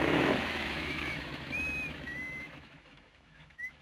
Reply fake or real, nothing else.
fake